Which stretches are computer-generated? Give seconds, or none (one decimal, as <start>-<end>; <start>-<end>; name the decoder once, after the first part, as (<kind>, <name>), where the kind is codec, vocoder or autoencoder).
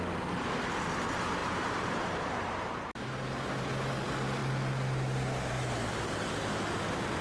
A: 1.4-3.0 (vocoder, BigVGAN v2)